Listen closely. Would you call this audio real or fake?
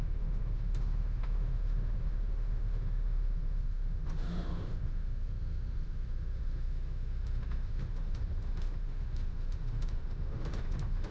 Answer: fake